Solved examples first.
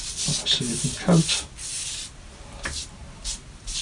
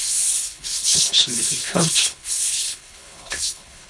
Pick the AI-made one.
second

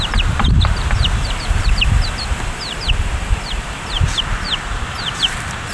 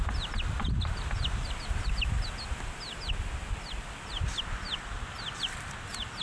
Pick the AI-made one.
first